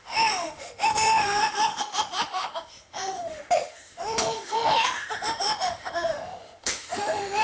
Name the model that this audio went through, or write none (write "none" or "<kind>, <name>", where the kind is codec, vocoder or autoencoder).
autoencoder, DAC-VAE